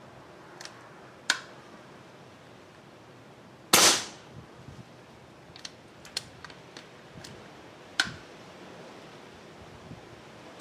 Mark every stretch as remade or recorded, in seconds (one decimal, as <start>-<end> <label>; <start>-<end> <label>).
0.0-7.9 recorded; 7.9-8.5 remade; 8.5-10.6 recorded